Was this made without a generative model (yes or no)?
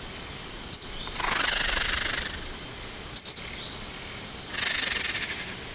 yes